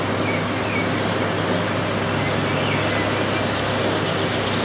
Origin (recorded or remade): recorded